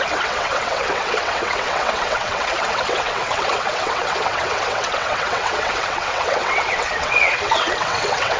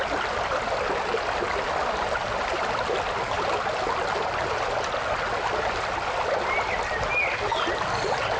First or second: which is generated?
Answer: first